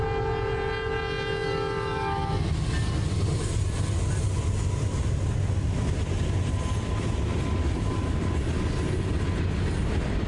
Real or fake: real